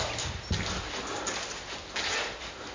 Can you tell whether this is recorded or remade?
recorded